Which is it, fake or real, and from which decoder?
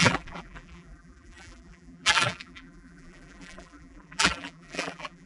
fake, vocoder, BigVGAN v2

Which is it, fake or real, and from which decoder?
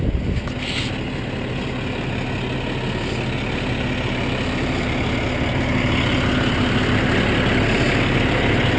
real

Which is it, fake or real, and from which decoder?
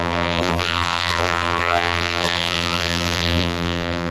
fake, vocoder, BigVGAN v2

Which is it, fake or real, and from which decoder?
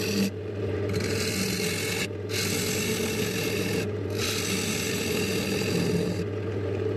real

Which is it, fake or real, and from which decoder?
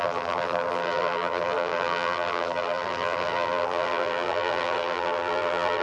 fake, vocoder, BigVGAN v2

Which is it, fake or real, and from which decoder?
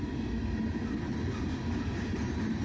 real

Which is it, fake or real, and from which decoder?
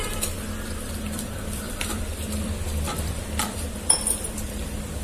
fake, vocoder, BigVGAN v2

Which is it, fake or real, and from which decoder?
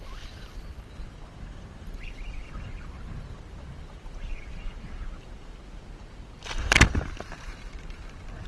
fake, vocoder, BigVGAN v2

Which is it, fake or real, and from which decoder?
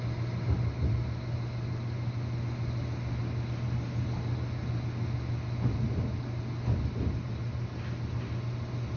real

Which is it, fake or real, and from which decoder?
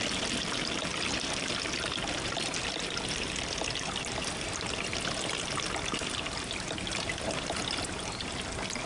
real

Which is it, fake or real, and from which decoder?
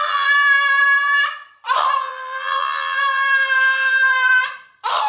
fake, vocoder, BigVGAN v2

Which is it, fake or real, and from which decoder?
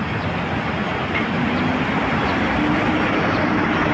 real